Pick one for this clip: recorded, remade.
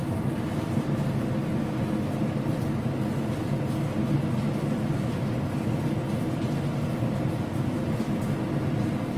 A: recorded